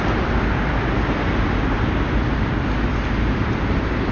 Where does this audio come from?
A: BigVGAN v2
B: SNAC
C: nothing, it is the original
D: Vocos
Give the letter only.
C